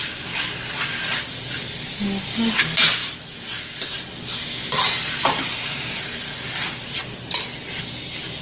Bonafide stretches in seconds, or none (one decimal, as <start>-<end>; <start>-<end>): 0.0-8.4

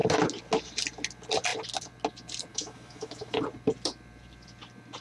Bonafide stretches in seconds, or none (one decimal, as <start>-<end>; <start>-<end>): 0.0-2.5; 3.4-5.0

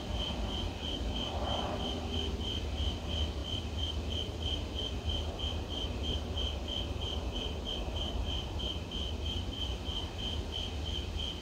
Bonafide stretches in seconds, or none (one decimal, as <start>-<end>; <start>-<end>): 0.0-11.4

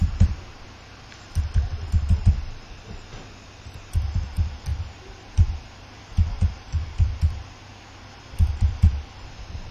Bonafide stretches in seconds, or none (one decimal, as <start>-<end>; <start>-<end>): 0.6-4.7; 6.5-9.7

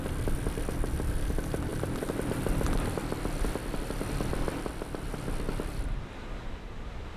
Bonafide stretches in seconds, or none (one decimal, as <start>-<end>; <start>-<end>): 0.0-7.2

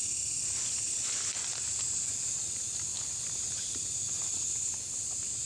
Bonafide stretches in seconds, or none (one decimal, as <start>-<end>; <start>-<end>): 0.0-5.5